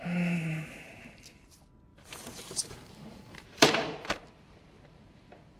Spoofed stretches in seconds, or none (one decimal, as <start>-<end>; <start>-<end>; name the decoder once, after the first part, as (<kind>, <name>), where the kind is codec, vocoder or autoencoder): 1.9-5.6 (vocoder, BigVGAN v2)